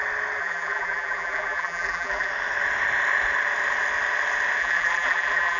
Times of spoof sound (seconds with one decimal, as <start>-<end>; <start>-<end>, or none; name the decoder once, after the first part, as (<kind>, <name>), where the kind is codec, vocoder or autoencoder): 0.4-2.3 (vocoder, BigVGAN v2); 4.6-5.6